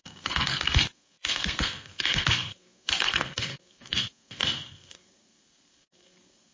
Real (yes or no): no